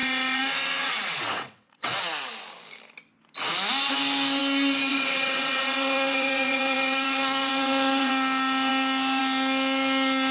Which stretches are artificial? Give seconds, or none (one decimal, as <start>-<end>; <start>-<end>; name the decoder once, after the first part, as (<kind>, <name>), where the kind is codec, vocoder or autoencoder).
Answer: 0.0-2.0 (vocoder, WaveNeXt); 4.9-8.1